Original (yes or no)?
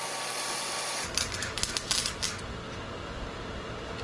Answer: yes